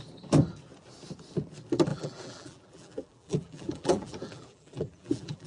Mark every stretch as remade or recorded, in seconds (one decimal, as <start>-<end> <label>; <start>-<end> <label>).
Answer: 0.0-1.9 recorded; 1.9-5.5 remade